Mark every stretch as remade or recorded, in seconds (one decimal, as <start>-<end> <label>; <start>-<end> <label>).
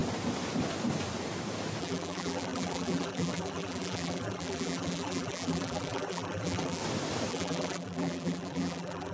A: 0.0-1.8 recorded; 1.8-6.8 remade; 6.8-7.3 recorded; 7.3-9.1 remade